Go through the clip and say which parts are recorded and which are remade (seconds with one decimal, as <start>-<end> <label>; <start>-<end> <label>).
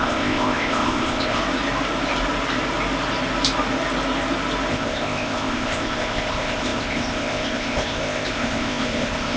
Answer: 0.0-1.4 remade; 1.4-4.7 recorded; 4.7-9.4 remade